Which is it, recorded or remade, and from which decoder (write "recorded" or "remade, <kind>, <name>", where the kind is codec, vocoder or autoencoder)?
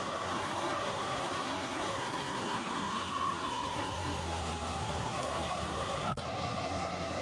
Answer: remade, codec, SNAC